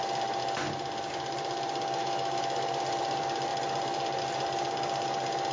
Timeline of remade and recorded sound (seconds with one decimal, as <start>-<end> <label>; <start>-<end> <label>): 0.0-2.0 recorded; 2.0-2.7 remade; 2.7-5.5 recorded